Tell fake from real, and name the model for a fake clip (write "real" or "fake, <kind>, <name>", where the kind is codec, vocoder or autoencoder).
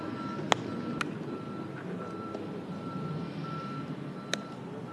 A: real